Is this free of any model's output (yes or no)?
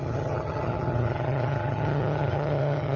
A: no